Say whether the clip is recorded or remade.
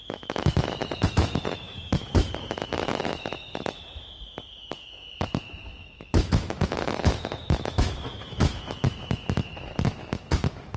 remade